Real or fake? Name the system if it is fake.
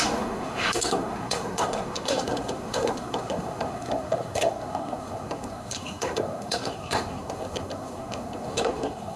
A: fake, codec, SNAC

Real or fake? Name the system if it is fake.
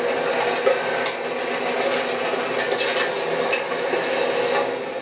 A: real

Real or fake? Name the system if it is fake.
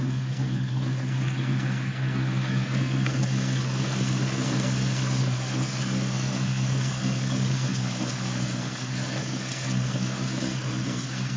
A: fake, codec, SNAC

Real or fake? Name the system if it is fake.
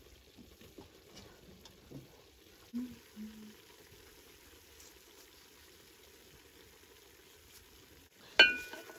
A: real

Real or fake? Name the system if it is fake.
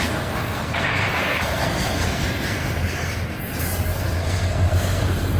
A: fake, codec, SNAC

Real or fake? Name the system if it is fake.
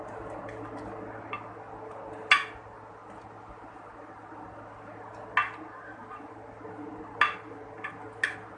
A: real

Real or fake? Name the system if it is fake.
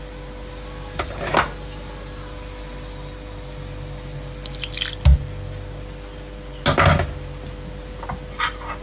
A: real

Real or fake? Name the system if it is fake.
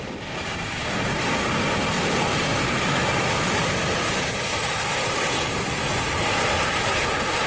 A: real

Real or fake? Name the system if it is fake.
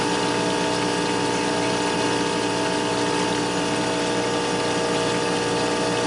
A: real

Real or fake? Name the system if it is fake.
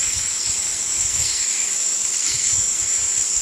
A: fake, codec, SNAC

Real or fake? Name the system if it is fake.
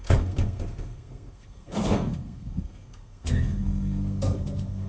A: fake, codec, SNAC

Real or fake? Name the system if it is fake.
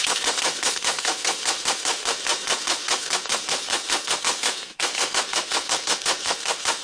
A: fake, codec, SNAC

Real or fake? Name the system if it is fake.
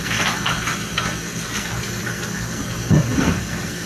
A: fake, codec, SNAC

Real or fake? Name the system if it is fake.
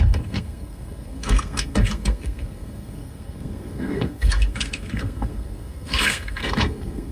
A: fake, codec, SNAC